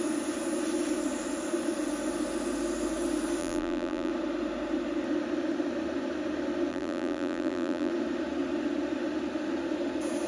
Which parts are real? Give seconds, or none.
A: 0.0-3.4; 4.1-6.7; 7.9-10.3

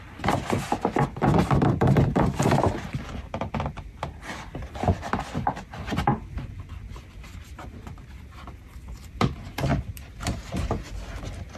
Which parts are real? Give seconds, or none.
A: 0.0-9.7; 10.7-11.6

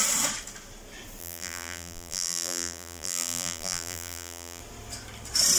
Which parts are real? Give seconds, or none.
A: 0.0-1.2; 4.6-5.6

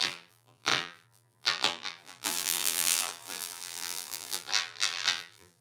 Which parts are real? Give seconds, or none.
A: none

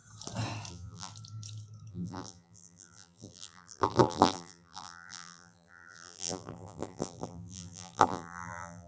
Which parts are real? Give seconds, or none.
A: 0.0-0.7; 1.1-1.9